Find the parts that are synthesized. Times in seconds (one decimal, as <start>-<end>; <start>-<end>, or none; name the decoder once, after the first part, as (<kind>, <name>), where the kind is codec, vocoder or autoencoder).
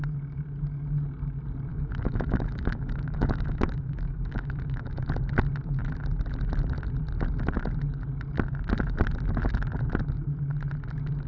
1.7-5.1 (autoencoder, DAC-VAE)